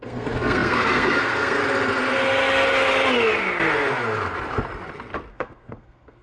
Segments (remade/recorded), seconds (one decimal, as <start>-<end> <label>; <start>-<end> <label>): 0.0-1.6 remade; 1.6-5.3 recorded; 5.3-6.2 remade

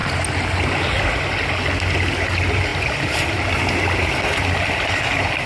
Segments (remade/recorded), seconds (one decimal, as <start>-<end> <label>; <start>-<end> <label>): 0.0-5.5 recorded

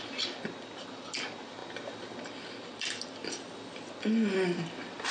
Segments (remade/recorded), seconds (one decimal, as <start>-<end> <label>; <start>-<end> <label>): 0.0-5.1 recorded

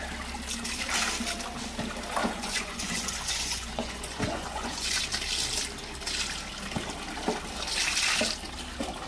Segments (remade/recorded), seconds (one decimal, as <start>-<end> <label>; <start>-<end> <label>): 0.0-2.2 recorded; 2.2-5.0 remade; 5.0-9.1 recorded

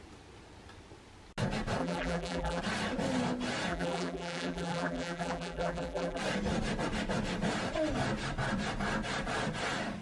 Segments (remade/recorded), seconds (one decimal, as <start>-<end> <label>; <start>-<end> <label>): 0.0-1.8 recorded; 1.8-2.6 remade; 2.6-3.7 recorded; 3.7-6.2 remade; 6.2-10.0 recorded

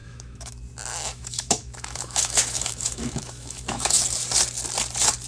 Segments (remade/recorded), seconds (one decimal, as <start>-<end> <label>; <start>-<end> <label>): 0.0-0.5 remade; 0.5-0.9 recorded; 0.9-4.0 remade; 4.0-5.3 recorded